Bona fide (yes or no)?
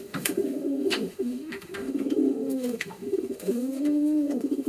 no